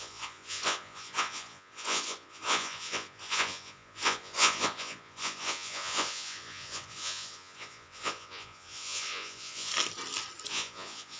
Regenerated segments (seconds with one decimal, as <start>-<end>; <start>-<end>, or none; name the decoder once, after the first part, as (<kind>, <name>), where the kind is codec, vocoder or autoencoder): 0.0-9.7 (vocoder, Vocos); 10.5-11.2